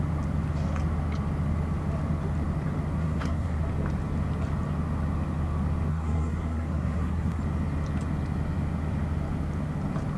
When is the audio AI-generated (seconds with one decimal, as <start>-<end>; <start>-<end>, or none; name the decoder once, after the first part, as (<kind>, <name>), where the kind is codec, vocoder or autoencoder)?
3.0-3.6 (codec, SNAC); 5.9-7.4